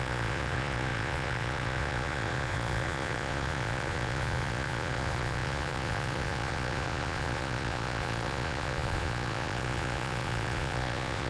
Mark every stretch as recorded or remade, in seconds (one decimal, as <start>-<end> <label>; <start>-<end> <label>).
0.0-11.3 remade